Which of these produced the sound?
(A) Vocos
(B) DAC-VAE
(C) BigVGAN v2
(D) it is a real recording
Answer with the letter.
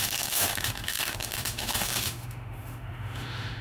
B